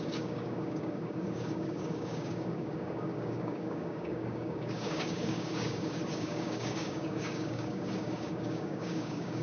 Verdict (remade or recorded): remade